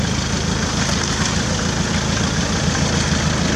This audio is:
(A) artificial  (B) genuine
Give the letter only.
B